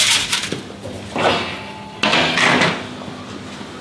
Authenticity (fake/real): real